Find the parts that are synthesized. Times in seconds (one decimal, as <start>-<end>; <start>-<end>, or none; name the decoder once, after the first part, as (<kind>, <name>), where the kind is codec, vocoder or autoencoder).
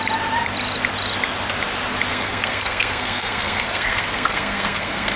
2.1-5.2 (codec, SNAC)